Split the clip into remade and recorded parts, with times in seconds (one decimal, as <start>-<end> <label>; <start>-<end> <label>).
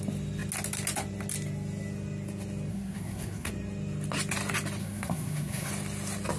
0.0-2.7 recorded; 2.7-3.5 remade; 3.5-4.8 recorded; 4.8-5.7 remade; 5.7-6.4 recorded